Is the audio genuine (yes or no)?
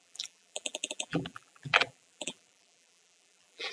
no